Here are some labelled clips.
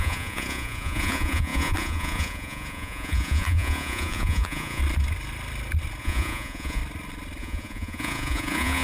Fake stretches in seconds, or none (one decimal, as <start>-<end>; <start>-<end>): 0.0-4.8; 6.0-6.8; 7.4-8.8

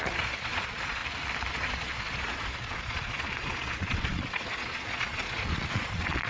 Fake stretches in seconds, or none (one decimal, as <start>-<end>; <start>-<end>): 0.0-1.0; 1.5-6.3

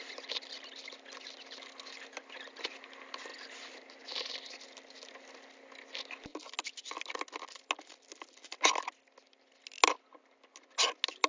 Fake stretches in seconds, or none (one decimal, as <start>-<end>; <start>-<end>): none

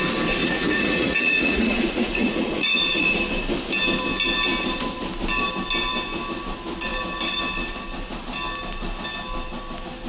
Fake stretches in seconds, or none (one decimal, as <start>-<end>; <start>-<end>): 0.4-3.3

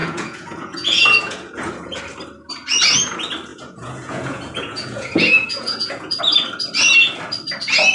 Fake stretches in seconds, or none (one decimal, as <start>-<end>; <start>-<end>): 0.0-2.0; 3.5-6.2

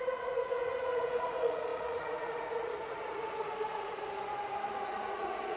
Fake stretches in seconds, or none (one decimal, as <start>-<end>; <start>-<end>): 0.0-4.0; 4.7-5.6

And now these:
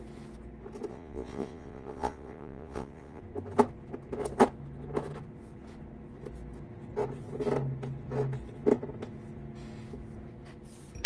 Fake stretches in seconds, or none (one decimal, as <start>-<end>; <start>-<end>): 0.9-3.2

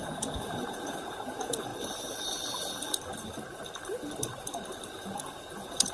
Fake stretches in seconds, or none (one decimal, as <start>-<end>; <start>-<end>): 0.0-1.7; 5.2-5.9